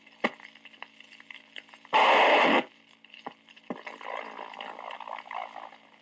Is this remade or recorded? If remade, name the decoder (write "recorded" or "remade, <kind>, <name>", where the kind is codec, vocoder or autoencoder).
recorded